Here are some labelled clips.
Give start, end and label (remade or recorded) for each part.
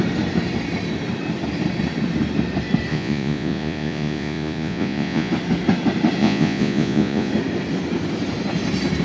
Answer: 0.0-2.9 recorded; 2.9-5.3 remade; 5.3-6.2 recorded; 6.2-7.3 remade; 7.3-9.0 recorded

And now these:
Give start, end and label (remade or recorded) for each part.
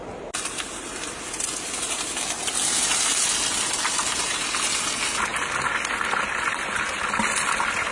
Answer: 0.0-7.9 recorded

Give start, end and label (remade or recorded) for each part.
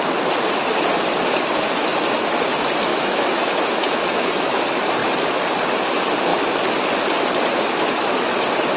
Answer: 0.0-2.9 recorded; 2.9-4.6 remade; 4.6-8.8 recorded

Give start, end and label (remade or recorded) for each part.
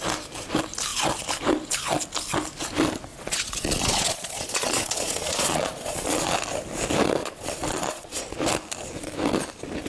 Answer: 0.0-3.1 recorded; 3.1-6.3 remade; 6.3-7.2 recorded; 7.2-8.2 remade; 8.2-9.9 recorded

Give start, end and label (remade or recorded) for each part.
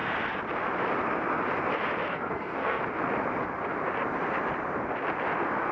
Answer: 0.0-2.1 recorded; 2.1-2.8 remade; 2.8-5.7 recorded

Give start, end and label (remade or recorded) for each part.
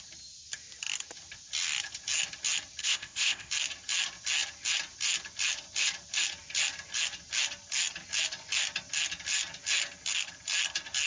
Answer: 0.0-2.8 recorded; 2.8-3.5 remade; 3.5-11.1 recorded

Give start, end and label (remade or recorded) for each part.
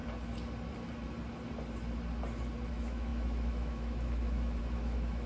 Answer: 0.0-2.7 recorded; 2.7-5.3 remade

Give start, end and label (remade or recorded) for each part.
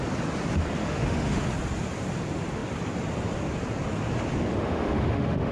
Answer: 0.0-0.8 recorded; 0.8-1.4 remade; 1.4-4.5 recorded; 4.5-5.5 remade